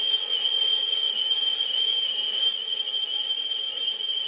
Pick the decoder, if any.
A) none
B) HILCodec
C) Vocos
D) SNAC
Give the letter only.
A